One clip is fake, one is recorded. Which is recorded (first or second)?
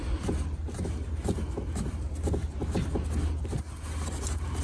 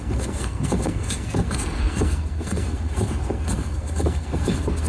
first